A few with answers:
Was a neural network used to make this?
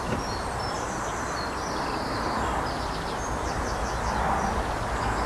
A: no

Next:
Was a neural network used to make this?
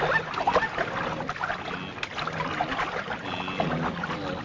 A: no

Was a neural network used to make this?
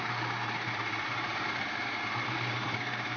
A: yes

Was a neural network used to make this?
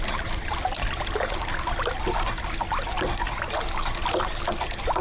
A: no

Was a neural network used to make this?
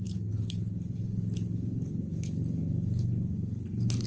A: yes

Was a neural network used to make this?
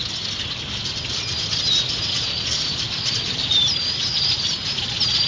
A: no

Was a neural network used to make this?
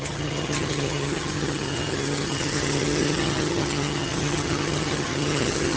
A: yes